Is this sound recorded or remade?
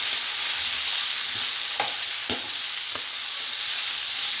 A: recorded